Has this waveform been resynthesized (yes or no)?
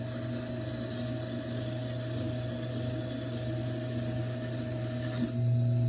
no